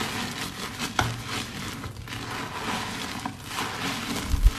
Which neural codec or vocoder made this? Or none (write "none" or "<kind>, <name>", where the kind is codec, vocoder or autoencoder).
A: none